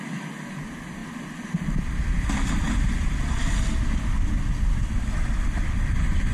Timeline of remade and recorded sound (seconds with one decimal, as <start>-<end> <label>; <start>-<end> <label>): 0.0-6.3 recorded